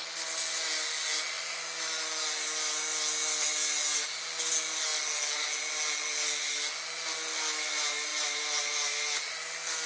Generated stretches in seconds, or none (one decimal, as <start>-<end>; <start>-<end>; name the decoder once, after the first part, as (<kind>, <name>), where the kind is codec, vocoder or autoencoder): none